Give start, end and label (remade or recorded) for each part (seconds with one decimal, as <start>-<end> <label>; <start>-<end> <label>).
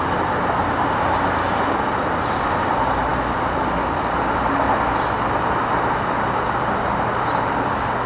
0.0-8.1 recorded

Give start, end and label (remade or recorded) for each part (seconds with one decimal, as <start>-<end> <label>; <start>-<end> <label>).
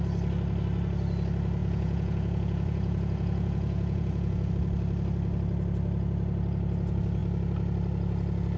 0.0-1.6 recorded; 1.6-4.5 remade; 4.5-8.6 recorded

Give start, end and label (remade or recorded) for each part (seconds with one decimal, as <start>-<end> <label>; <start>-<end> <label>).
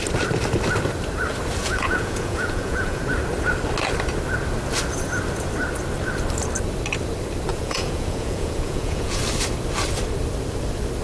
0.0-1.6 recorded; 1.6-3.0 remade; 3.0-7.5 recorded; 7.5-9.2 remade; 9.2-11.0 recorded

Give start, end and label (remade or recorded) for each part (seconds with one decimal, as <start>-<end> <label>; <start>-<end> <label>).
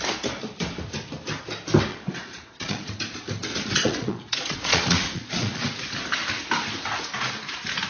0.0-1.9 recorded; 1.9-2.9 remade; 2.9-3.5 recorded; 3.5-5.6 remade; 5.6-7.9 recorded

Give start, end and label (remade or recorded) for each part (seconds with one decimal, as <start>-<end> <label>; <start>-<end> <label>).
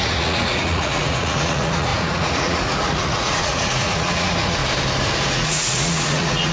0.0-4.6 remade; 4.6-5.3 recorded; 5.3-6.5 remade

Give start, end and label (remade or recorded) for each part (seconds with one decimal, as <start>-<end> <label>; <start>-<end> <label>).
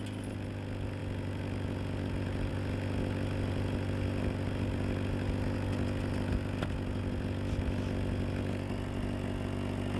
0.0-10.0 recorded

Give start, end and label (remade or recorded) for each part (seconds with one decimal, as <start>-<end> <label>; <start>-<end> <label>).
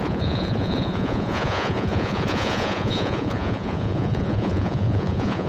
0.0-5.5 remade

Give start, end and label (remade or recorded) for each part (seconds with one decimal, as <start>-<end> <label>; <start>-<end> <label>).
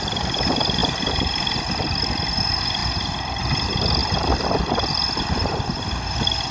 0.0-6.5 recorded